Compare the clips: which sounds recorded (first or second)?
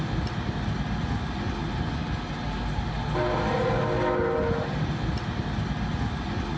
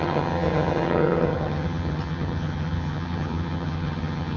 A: first